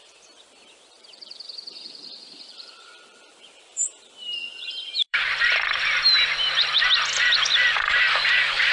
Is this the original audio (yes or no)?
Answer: no